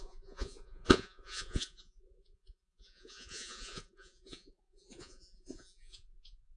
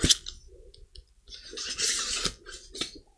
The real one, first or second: second